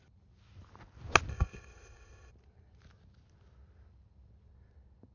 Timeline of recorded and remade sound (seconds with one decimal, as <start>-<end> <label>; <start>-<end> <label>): 0.0-1.3 recorded; 1.3-2.3 remade; 2.3-5.1 recorded